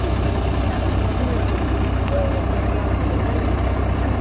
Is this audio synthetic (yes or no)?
no